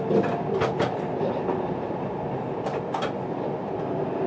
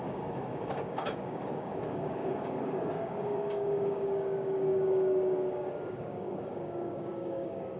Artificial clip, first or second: second